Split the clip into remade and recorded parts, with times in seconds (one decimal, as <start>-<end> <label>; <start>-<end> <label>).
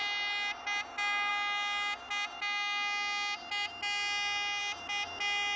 0.0-5.6 recorded